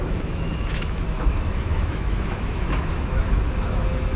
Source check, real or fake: fake